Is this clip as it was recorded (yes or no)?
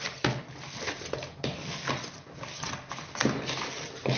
yes